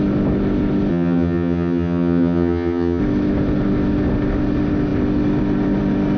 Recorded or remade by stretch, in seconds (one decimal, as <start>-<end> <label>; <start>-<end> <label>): 0.0-0.9 recorded; 0.9-3.0 remade; 3.0-6.2 recorded